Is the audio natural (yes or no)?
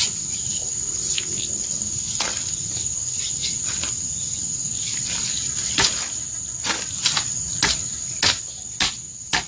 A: yes